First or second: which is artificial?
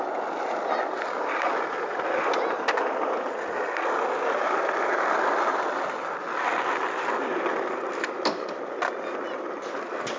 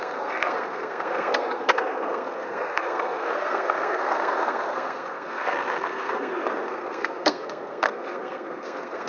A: second